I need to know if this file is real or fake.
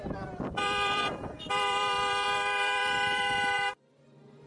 fake